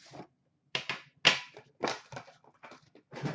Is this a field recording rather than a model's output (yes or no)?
yes